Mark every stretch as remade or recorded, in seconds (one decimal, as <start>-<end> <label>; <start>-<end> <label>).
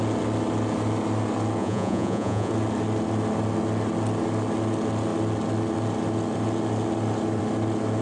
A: 0.0-1.6 recorded; 1.6-2.5 remade; 2.5-8.0 recorded